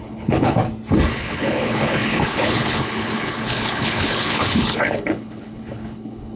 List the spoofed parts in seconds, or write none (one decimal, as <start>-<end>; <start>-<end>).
0.0-0.6; 1.1-6.4